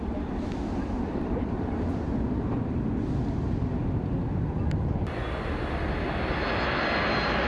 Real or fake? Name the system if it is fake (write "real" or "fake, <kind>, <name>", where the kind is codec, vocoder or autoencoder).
real